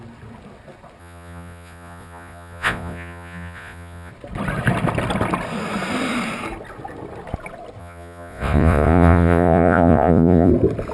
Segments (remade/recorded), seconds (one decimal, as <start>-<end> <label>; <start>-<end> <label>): 0.0-1.0 recorded; 1.0-4.1 remade; 4.1-7.8 recorded; 7.8-10.5 remade; 10.5-10.9 recorded